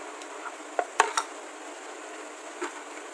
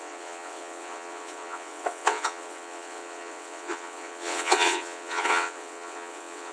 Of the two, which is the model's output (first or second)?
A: second